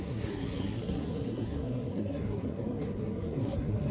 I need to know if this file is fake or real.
fake